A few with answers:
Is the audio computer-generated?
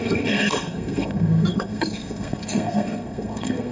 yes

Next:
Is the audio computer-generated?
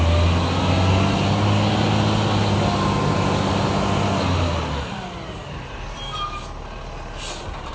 no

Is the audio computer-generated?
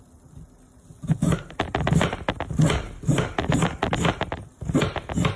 no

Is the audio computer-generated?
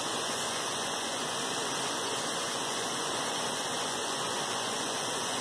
yes